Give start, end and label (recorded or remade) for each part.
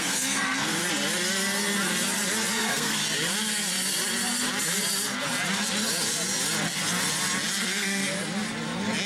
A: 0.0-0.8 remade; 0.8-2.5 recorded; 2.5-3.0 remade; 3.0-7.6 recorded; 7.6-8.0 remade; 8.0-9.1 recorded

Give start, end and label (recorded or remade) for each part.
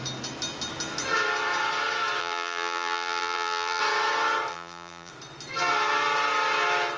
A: 0.0-2.2 recorded; 2.2-3.8 remade; 3.8-4.5 recorded; 4.5-5.1 remade; 5.1-7.0 recorded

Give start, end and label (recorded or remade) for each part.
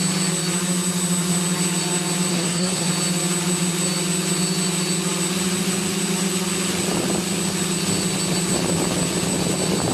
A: 0.0-2.3 recorded; 2.3-2.9 remade; 2.9-9.9 recorded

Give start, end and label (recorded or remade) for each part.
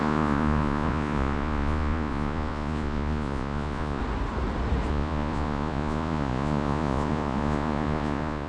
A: 0.0-4.0 remade; 4.0-4.9 recorded; 4.9-8.5 remade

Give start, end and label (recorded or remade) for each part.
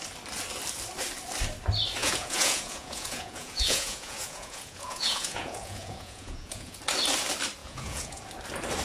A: 0.0-2.0 recorded; 2.0-6.8 remade; 6.8-7.6 recorded; 7.6-8.2 remade; 8.2-8.8 recorded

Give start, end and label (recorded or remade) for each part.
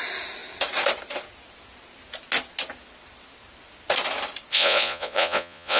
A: 0.0-4.5 recorded; 4.5-5.8 remade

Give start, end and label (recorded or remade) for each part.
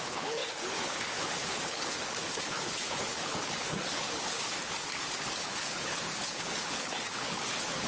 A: 0.0-7.9 remade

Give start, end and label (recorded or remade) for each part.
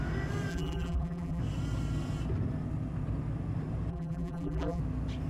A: 0.0-0.5 recorded; 0.5-1.4 remade; 1.4-3.9 recorded; 3.9-4.8 remade; 4.8-5.3 recorded